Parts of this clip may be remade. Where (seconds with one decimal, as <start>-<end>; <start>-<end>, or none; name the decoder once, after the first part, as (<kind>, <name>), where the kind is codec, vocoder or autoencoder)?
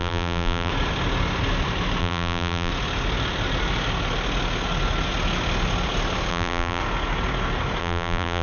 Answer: 0.0-0.7 (vocoder, BigVGAN v2); 2.0-2.7; 6.3-6.8; 7.8-8.4